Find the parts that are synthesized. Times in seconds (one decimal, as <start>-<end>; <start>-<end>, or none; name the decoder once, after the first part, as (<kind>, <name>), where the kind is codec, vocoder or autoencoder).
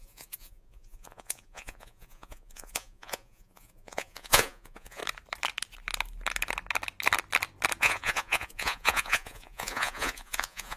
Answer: 0.0-5.0 (vocoder, Vocos); 7.8-10.8